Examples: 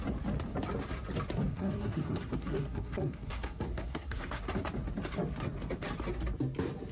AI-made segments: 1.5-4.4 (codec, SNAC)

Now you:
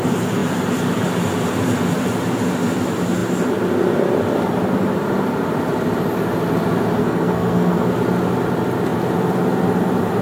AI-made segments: 7.0-7.9 (codec, SNAC)

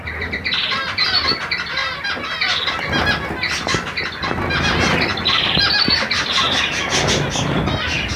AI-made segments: none

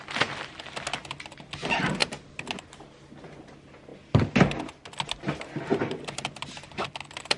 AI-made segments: 2.0-2.5 (vocoder, BigVGAN v2); 5.7-6.9

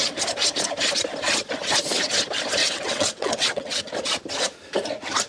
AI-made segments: 2.6-3.8 (vocoder, WaveNeXt)

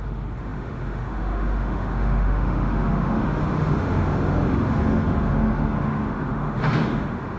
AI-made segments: 0.0-7.4 (autoencoder, DAC-VAE)